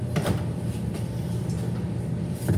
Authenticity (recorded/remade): remade